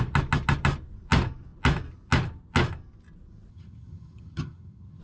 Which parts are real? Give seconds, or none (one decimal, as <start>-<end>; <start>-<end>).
0.0-3.5